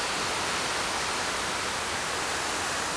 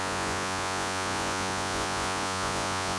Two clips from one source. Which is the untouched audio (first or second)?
first